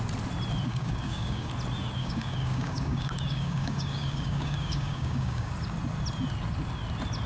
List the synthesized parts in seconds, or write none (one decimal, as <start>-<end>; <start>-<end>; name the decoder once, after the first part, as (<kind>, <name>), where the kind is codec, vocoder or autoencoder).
0.7-1.5 (codec, DAC); 2.0-5.5